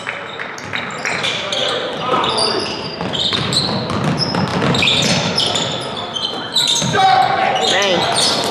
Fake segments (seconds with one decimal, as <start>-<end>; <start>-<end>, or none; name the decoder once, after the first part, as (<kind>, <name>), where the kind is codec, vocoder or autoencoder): 1.6-3.6 (vocoder, BigVGAN v2)